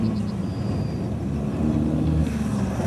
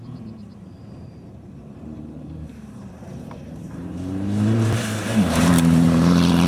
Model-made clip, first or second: second